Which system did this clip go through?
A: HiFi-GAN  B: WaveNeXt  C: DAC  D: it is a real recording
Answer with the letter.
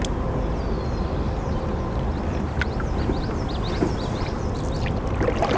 D